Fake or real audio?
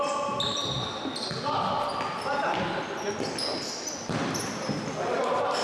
real